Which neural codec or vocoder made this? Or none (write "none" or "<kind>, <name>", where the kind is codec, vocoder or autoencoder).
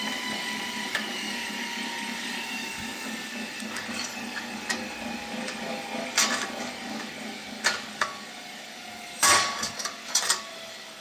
codec, DAC